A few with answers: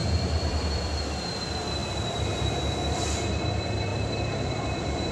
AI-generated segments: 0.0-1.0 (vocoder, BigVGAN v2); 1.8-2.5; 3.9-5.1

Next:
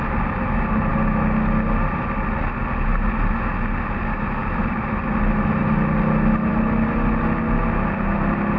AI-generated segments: 4.4-5.0 (vocoder, BigVGAN v2); 6.5-7.4

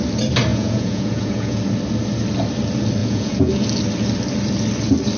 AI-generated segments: 0.5-1.6 (vocoder, Vocos); 3.0-3.5